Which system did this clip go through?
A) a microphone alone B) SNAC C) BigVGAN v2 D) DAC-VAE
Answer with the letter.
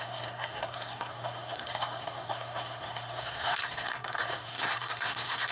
B